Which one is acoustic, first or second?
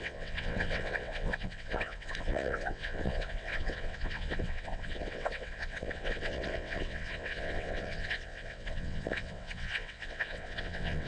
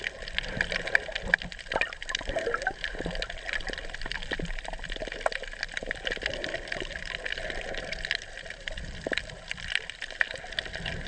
second